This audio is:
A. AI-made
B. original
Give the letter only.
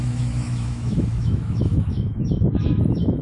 A